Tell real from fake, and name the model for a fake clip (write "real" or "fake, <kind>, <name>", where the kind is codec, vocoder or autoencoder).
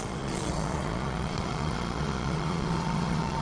fake, vocoder, Vocos